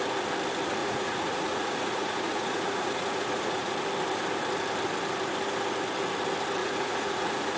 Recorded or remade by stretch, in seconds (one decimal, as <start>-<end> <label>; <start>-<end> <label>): 0.0-0.8 recorded; 0.8-3.7 remade; 3.7-6.6 recorded; 6.6-7.6 remade